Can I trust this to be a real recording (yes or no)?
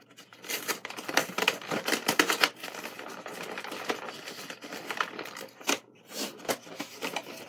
no